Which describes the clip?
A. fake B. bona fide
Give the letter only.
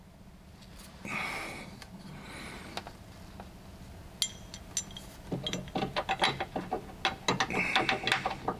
B